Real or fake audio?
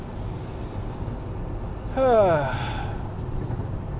real